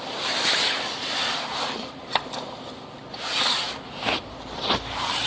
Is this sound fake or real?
real